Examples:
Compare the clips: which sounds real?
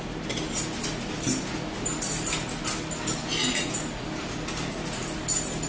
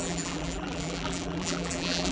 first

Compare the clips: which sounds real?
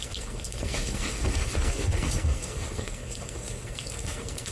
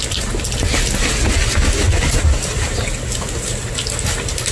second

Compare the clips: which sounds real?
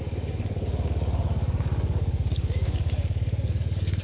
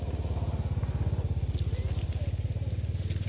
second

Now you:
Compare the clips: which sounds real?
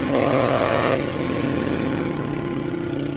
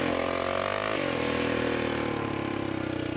second